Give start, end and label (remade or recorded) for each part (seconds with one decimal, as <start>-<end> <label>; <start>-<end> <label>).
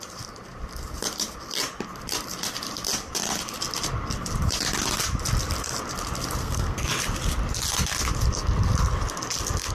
0.0-6.4 recorded; 6.4-6.9 remade; 6.9-9.7 recorded